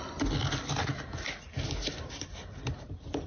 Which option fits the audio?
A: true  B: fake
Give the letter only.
A